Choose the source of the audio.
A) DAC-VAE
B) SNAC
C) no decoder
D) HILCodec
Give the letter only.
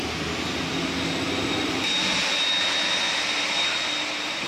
C